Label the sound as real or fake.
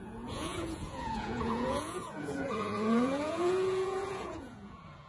fake